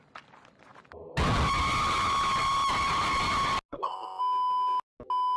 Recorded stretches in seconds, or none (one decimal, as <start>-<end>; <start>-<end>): 0.0-3.7; 4.2-5.4